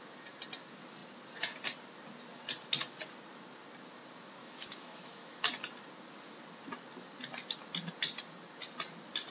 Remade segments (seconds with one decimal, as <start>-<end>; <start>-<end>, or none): 4.4-5.5